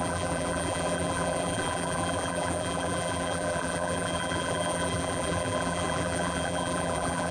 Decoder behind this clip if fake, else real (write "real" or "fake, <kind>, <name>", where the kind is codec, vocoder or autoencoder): fake, vocoder, BigVGAN v2